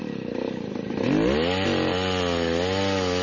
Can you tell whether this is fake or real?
real